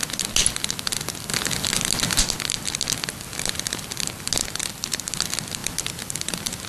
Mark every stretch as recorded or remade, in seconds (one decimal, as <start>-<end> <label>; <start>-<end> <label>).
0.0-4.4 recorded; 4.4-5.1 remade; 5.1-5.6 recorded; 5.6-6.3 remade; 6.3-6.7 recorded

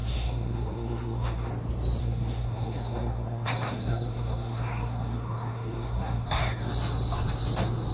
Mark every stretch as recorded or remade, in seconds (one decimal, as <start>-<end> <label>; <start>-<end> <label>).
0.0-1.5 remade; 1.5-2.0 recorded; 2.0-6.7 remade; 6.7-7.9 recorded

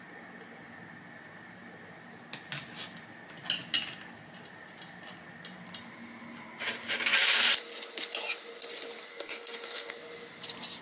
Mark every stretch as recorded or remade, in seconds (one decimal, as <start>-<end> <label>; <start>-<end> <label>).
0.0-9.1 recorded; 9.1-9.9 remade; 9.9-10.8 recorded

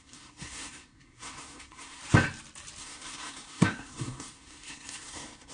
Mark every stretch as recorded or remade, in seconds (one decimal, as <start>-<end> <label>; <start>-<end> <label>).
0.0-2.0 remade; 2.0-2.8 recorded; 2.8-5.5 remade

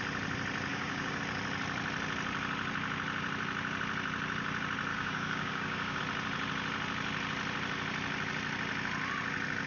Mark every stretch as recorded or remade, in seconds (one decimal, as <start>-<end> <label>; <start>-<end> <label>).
0.0-0.7 recorded; 0.7-1.2 remade; 1.2-4.9 recorded; 4.9-6.0 remade; 6.0-9.7 recorded

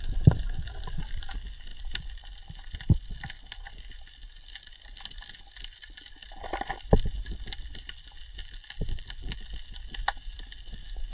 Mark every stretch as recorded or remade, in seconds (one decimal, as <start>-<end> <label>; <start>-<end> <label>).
0.0-8.4 recorded; 8.4-9.4 remade; 9.4-11.1 recorded

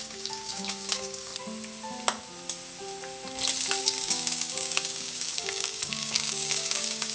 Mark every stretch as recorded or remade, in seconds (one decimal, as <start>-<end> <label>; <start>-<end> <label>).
0.0-1.3 remade; 1.3-3.8 recorded; 3.8-7.1 remade